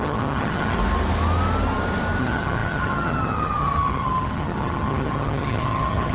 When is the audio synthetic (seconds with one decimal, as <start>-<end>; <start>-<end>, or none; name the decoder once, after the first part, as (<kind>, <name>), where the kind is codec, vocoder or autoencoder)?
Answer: 0.0-0.8 (vocoder, HiFi-GAN); 2.2-6.1